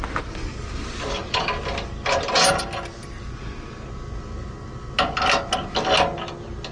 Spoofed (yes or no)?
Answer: no